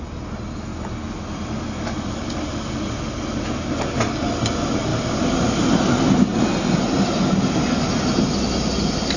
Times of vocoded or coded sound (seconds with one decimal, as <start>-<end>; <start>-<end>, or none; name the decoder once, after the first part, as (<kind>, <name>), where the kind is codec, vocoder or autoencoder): none